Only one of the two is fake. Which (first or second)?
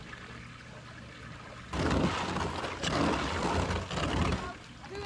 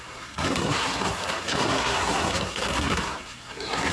second